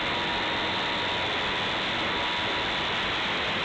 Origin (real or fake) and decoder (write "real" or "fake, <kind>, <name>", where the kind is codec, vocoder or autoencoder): real